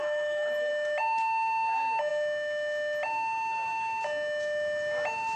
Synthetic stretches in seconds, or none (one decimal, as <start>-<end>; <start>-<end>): 0.0-0.7